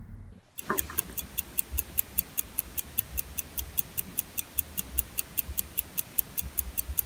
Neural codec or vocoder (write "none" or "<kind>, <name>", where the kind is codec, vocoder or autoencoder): none